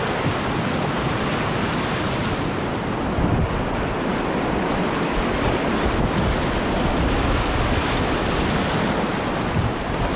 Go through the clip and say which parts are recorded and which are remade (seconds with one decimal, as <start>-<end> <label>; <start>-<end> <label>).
0.0-10.2 recorded